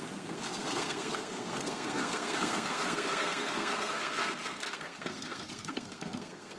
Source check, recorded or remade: remade